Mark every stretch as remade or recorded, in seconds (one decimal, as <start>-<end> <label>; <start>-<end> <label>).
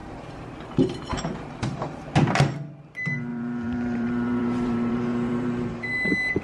0.0-0.7 remade; 0.7-1.1 recorded; 1.1-1.8 remade; 1.8-3.3 recorded; 3.3-5.9 remade; 5.9-6.4 recorded